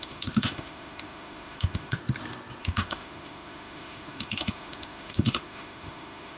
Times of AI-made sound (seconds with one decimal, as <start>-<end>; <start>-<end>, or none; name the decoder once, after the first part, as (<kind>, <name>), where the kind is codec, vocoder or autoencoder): 0.0-2.0 (autoencoder, DAC-VAE); 2.6-6.4